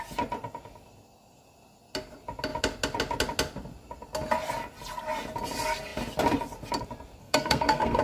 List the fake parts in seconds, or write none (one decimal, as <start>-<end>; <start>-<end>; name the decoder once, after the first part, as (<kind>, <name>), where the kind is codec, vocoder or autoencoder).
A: 7.2-8.0 (codec, SNAC)